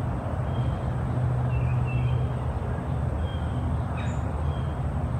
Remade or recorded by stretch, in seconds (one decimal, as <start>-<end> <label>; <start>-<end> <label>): 0.0-5.2 recorded